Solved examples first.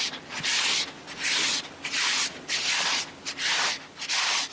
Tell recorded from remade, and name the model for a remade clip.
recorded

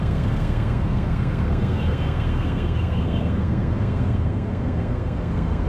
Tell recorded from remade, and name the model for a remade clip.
remade, codec, SNAC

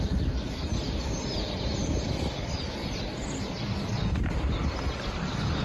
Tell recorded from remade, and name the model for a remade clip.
recorded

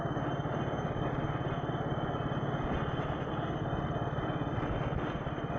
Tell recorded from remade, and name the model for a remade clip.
recorded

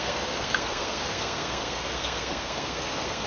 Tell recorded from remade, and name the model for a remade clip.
remade, codec, SNAC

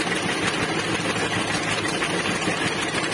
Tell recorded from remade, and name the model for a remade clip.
recorded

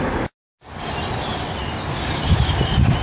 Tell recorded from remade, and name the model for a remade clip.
recorded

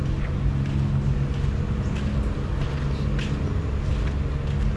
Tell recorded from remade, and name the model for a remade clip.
recorded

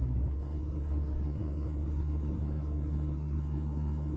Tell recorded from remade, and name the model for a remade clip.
remade, codec, SNAC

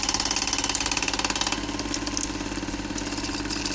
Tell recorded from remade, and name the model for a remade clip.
recorded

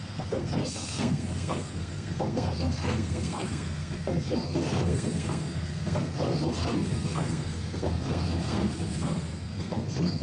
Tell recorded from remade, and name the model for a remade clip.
remade, codec, SNAC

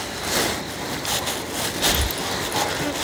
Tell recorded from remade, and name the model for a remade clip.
recorded